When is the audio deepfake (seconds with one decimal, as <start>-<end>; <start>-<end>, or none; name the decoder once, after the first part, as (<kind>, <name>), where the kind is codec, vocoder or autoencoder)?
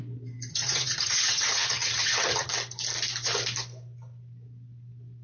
0.5-2.5 (vocoder, HiFi-GAN)